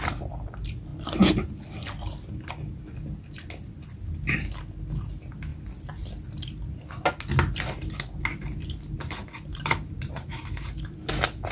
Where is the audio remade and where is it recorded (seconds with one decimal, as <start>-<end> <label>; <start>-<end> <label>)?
0.0-9.5 recorded; 9.5-10.1 remade; 10.1-11.5 recorded